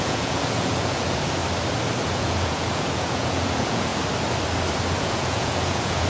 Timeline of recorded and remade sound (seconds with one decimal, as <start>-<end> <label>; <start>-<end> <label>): 0.0-1.4 remade; 1.4-2.1 recorded; 2.1-3.9 remade; 3.9-5.0 recorded; 5.0-6.1 remade